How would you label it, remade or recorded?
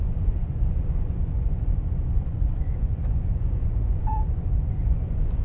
remade